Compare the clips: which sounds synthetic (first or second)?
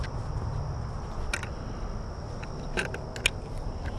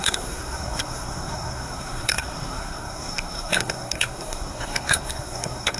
second